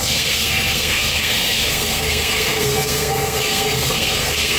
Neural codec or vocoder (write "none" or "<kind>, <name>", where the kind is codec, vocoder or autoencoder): codec, SNAC